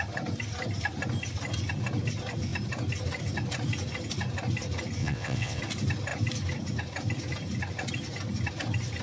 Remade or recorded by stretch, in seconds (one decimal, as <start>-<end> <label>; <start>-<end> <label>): 0.0-5.0 recorded; 5.0-5.6 remade; 5.6-9.0 recorded